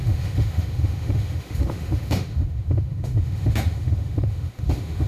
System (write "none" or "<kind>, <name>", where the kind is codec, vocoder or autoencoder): autoencoder, DAC-VAE